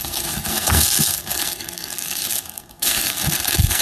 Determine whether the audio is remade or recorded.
remade